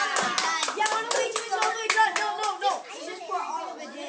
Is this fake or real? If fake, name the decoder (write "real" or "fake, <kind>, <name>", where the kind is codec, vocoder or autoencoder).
real